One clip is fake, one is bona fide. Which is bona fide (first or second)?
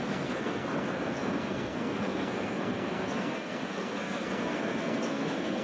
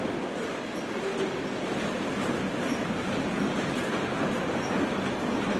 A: second